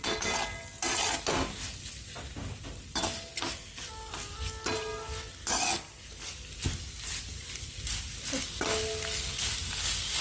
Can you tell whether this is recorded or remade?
recorded